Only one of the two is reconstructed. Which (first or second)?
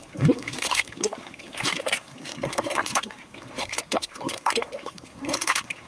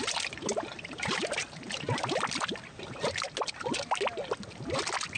first